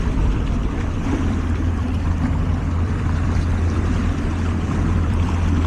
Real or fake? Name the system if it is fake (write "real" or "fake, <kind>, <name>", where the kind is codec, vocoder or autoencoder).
fake, vocoder, BigVGAN v2